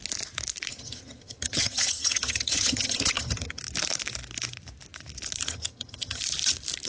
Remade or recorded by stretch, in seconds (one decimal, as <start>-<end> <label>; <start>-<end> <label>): 0.0-0.7 recorded; 0.7-3.6 remade; 3.6-5.4 recorded; 5.4-6.2 remade; 6.2-6.9 recorded